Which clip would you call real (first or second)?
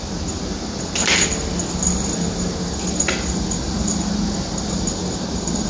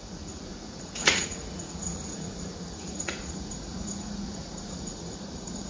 first